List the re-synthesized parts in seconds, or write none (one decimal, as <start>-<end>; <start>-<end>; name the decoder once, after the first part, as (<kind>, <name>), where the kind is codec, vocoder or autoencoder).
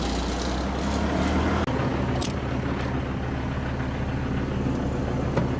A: none